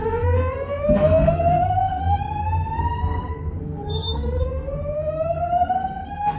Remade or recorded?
remade